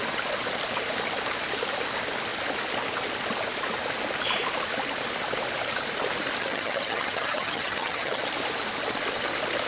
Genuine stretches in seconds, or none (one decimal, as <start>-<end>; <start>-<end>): 0.0-6.4; 8.2-9.7